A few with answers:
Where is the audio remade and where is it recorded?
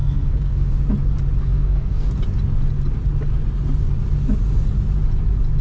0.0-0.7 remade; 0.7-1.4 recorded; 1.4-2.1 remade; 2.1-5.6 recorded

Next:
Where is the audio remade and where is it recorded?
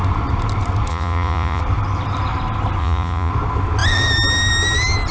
0.0-0.9 recorded; 0.9-1.6 remade; 1.6-2.8 recorded; 2.8-3.3 remade; 3.3-5.1 recorded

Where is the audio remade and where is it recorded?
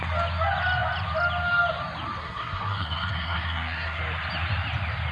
0.0-2.2 recorded; 2.2-4.0 remade; 4.0-5.1 recorded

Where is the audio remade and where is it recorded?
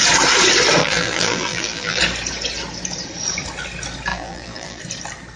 0.0-0.8 recorded; 0.8-2.0 remade; 2.0-4.1 recorded; 4.1-4.8 remade; 4.8-5.4 recorded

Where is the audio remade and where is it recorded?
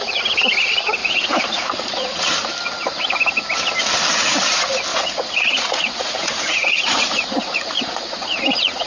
0.0-1.0 recorded; 1.0-2.5 remade; 2.5-4.9 recorded; 4.9-8.9 remade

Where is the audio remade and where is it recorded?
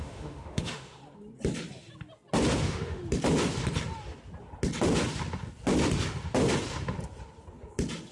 0.0-1.0 remade; 1.0-2.6 recorded; 2.6-3.0 remade; 3.0-8.1 recorded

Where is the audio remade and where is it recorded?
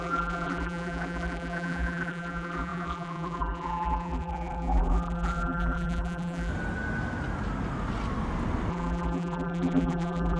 0.0-6.5 remade; 6.5-8.7 recorded; 8.7-10.4 remade